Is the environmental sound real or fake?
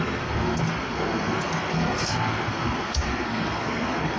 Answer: fake